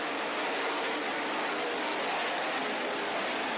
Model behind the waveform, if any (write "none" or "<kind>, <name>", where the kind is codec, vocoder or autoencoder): none